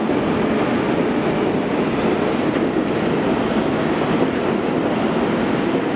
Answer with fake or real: real